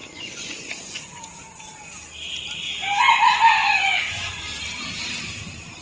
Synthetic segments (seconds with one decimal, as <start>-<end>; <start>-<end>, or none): 0.0-1.2; 3.6-4.4